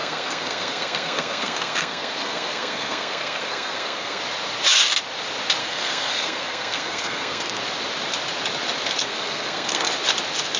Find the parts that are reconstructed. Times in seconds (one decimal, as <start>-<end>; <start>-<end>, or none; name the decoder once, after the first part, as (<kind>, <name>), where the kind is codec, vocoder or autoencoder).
0.0-4.2 (codec, SNAC); 5.6-7.6; 9.0-9.9